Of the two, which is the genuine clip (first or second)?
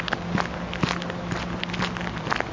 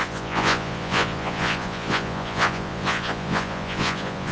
first